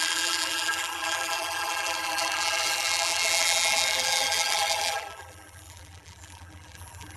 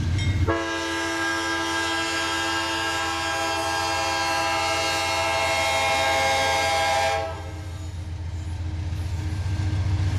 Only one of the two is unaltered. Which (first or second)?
second